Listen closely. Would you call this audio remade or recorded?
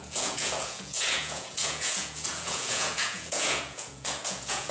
remade